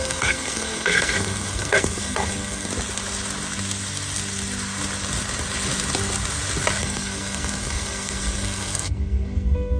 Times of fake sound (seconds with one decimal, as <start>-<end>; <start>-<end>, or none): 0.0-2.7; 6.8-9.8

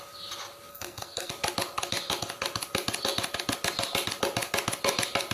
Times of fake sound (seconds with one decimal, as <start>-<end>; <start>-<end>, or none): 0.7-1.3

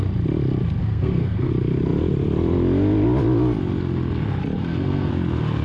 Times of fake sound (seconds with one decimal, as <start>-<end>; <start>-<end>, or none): 0.8-1.5; 4.6-5.1

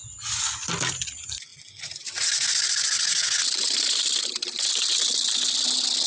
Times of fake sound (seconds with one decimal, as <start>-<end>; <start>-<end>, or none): none